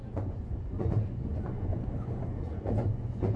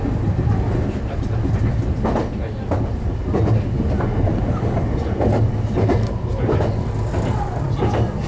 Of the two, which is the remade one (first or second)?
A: first